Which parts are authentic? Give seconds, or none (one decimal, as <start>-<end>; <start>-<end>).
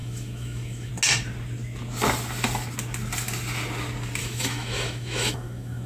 0.9-4.2